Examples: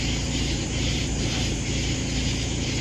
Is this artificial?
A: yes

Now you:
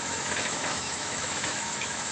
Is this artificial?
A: yes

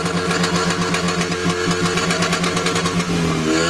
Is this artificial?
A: no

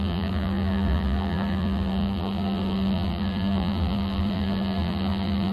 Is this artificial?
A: yes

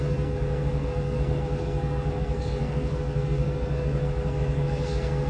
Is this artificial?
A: yes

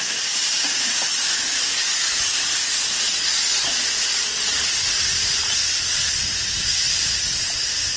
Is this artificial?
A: no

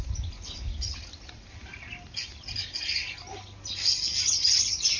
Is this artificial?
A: no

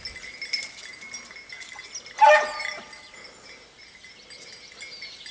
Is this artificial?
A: no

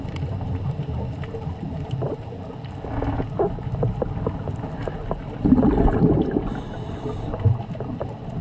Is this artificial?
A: no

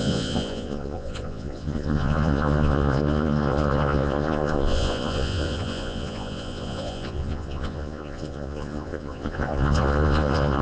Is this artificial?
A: yes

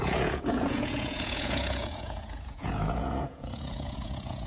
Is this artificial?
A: yes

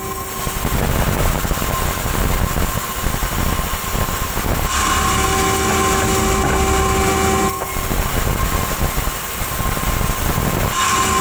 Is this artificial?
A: no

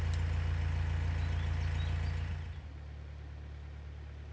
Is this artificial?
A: no